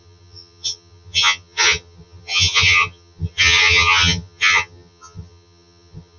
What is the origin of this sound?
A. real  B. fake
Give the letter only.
B